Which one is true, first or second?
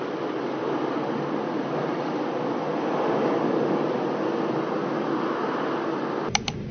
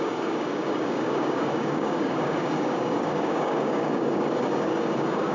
first